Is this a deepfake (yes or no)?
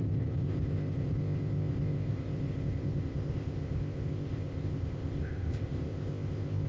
yes